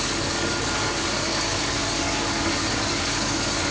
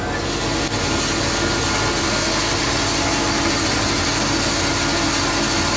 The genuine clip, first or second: second